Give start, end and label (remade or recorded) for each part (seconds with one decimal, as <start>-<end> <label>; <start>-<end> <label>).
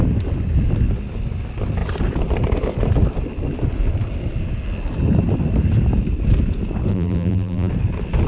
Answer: 0.0-6.9 recorded; 6.9-7.7 remade; 7.7-8.3 recorded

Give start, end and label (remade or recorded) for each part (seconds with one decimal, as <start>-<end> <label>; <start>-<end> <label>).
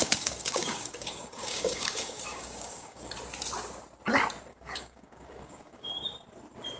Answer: 0.0-3.1 remade; 3.1-4.5 recorded; 4.5-5.9 remade; 5.9-6.8 recorded